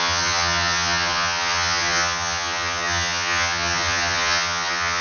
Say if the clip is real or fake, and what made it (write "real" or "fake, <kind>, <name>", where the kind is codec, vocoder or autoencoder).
fake, vocoder, HiFi-GAN